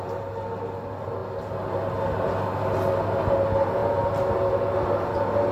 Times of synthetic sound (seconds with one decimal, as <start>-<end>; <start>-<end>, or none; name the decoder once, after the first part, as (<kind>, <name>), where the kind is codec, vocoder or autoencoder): none